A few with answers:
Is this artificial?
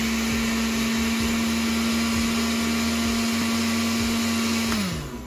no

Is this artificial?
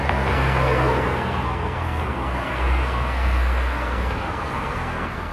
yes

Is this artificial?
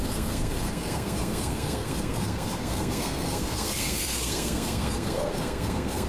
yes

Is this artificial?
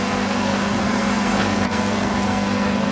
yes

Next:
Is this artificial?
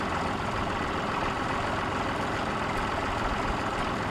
no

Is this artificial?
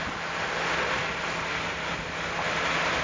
no